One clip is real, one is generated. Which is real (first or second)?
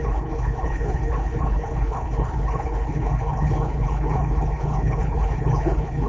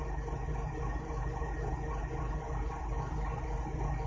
second